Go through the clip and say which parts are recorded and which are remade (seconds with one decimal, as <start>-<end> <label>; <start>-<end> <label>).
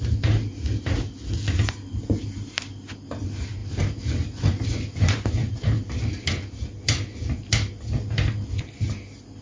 0.0-9.4 recorded